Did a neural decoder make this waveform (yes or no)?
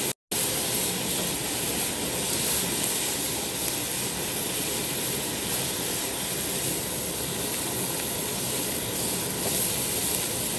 no